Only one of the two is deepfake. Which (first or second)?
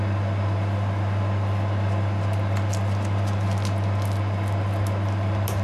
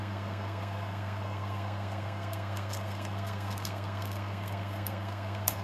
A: second